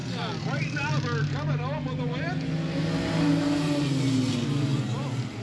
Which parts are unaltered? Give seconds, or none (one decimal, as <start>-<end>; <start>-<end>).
0.9-4.7